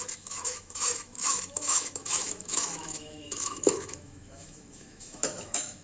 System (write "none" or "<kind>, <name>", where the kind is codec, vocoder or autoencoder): autoencoder, DAC-VAE